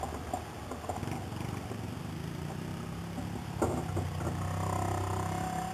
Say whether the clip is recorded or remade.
recorded